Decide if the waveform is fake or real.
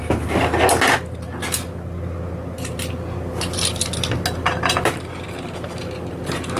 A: real